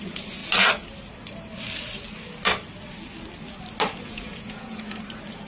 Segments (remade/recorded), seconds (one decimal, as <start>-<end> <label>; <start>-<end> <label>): 0.0-3.9 recorded; 3.9-5.0 remade; 5.0-5.5 recorded